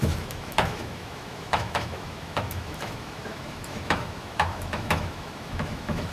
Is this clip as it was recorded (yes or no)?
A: no